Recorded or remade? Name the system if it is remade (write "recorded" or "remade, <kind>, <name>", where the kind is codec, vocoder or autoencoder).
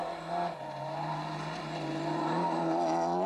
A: recorded